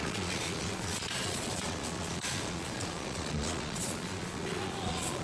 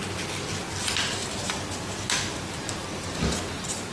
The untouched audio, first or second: second